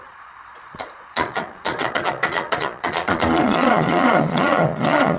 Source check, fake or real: fake